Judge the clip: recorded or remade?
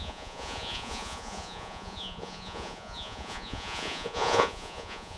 remade